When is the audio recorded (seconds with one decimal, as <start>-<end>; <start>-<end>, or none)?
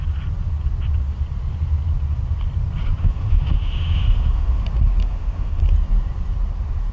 0.0-3.0; 4.6-5.0; 5.6-6.9